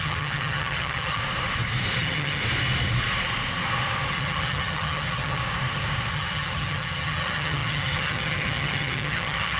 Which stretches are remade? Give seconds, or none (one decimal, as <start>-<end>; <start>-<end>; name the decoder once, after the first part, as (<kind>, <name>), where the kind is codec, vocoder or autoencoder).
0.0-1.2 (vocoder, HiFi-GAN); 2.0-2.4; 4.1-5.4; 6.1-9.6